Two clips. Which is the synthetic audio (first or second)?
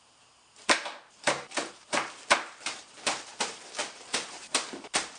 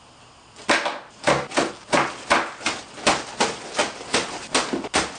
first